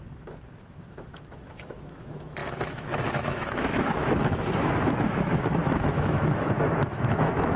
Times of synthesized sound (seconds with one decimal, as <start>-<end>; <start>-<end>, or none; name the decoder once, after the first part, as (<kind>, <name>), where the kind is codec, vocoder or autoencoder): 0.0-7.6 (autoencoder, DAC-VAE)